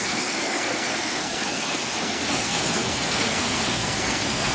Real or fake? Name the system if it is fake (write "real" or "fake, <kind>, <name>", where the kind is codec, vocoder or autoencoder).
fake, codec, SNAC